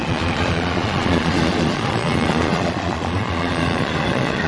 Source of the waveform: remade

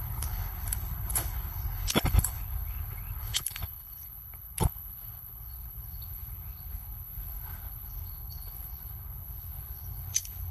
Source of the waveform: remade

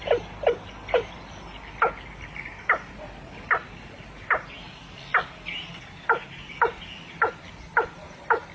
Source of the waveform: recorded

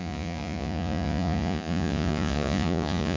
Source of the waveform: remade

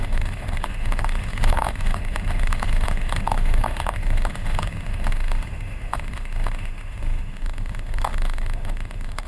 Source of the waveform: remade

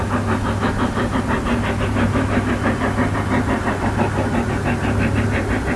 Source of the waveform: recorded